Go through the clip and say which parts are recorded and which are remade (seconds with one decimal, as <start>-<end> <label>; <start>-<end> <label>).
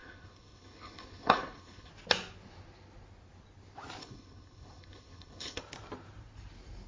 0.0-1.9 remade; 1.9-4.0 recorded; 4.0-5.6 remade; 5.6-6.9 recorded